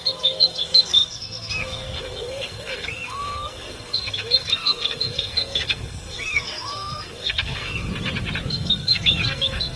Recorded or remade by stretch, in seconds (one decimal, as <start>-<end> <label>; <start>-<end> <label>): 0.0-7.9 remade; 7.9-8.5 recorded; 8.5-9.8 remade